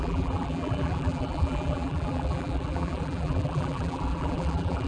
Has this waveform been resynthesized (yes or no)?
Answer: yes